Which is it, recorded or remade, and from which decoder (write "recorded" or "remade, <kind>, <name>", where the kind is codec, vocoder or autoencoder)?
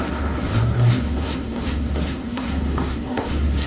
remade, codec, SNAC